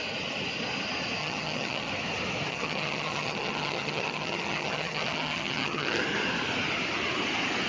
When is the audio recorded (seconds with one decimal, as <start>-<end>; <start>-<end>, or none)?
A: 0.0-1.2; 1.9-2.5; 6.0-7.7